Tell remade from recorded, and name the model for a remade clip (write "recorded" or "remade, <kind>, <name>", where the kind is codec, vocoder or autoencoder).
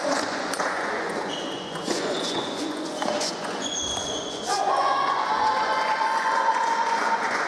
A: remade, vocoder, Vocos